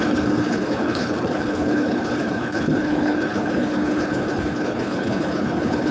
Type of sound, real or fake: fake